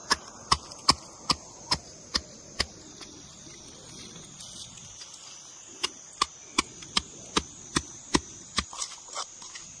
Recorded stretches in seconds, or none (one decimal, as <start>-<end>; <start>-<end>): 0.0-9.8